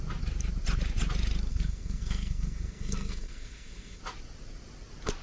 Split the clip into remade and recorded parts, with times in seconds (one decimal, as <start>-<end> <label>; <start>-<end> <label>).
0.0-1.5 recorded; 1.5-4.0 remade; 4.0-5.2 recorded